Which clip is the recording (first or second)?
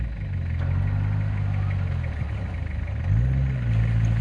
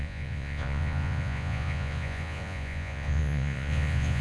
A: first